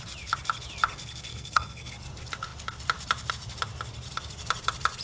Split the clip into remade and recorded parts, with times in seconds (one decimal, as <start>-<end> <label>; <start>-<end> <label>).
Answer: 0.0-1.3 recorded; 1.3-1.9 remade; 1.9-5.0 recorded